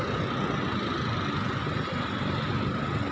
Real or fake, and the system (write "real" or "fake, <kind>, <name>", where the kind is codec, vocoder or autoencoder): real